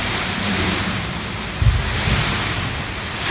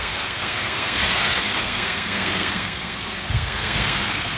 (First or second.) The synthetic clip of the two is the second